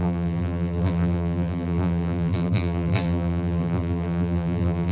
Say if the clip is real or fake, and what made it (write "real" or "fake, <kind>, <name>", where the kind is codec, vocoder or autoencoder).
fake, vocoder, BigVGAN v2